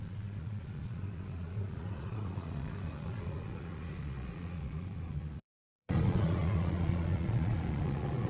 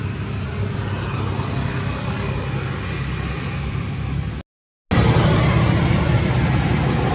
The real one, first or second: second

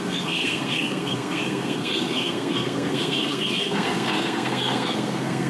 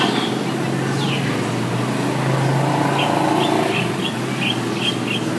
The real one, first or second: second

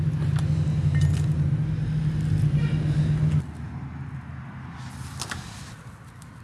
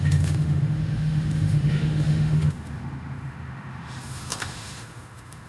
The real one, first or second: first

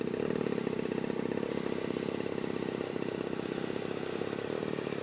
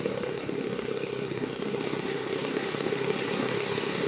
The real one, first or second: first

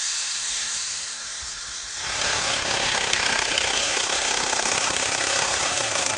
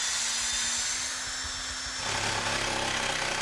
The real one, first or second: second